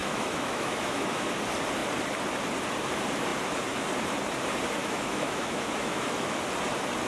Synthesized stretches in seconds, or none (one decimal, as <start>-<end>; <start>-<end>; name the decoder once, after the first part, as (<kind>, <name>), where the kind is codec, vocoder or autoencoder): 0.0-1.3 (autoencoder, DAC-VAE); 4.8-6.4